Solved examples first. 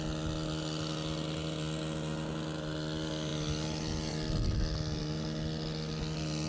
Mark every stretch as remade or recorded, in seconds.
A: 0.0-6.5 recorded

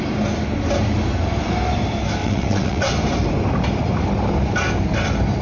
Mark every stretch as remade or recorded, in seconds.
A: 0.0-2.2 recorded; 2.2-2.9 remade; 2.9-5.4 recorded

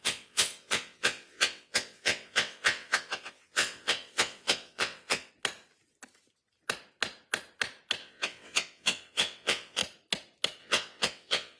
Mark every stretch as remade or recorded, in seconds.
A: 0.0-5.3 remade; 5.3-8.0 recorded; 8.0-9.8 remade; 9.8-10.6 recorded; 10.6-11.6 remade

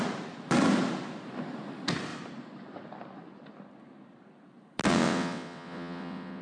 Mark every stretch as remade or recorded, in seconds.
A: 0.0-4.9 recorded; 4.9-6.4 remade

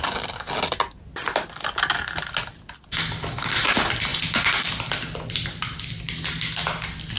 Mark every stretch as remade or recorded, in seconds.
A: 0.0-7.2 recorded

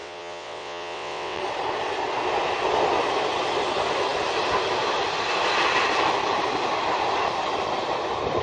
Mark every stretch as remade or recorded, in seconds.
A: 0.0-1.4 remade; 1.4-8.4 recorded

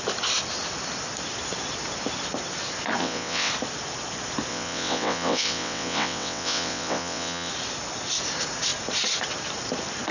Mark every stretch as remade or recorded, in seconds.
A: 0.0-3.0 recorded; 3.0-3.5 remade; 3.5-4.5 recorded; 4.5-7.5 remade; 7.5-10.1 recorded

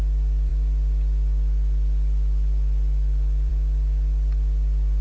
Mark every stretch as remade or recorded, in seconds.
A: 0.0-5.0 recorded